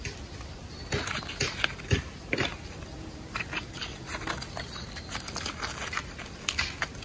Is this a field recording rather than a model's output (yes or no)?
yes